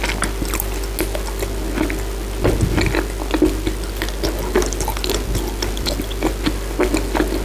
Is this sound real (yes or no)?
yes